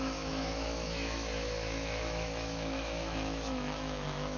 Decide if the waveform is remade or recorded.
remade